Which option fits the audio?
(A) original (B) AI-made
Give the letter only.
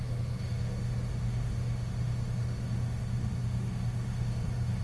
B